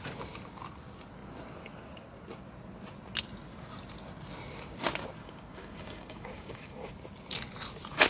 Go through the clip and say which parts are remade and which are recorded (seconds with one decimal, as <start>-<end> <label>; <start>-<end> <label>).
0.0-5.2 recorded; 5.2-6.9 remade; 6.9-8.1 recorded